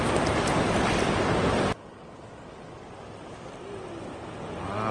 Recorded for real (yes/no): yes